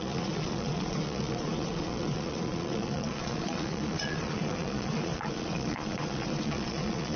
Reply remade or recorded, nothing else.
remade